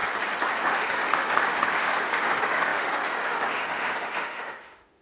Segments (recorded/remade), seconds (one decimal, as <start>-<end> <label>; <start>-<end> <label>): 0.0-0.6 recorded; 0.6-5.0 remade